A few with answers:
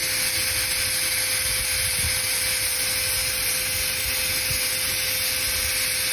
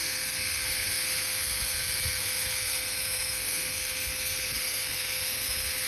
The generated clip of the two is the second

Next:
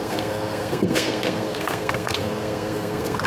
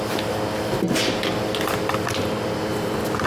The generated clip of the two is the first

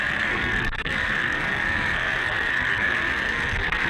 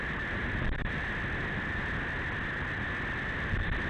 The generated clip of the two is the first